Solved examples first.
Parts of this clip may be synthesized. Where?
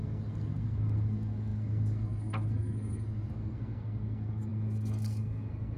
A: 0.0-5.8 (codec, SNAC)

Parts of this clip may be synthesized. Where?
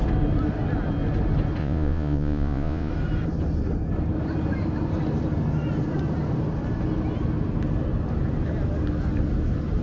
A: 1.6-2.9 (vocoder, Vocos)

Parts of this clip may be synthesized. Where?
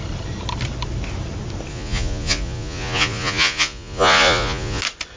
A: 1.7-4.8 (vocoder, Vocos)